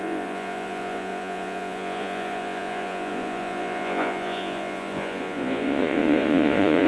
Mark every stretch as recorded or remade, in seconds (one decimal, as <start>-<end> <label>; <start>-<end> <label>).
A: 0.0-6.9 remade